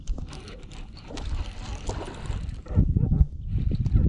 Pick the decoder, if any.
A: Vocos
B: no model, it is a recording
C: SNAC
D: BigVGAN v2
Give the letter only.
B